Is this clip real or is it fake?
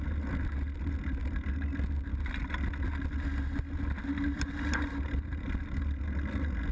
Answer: real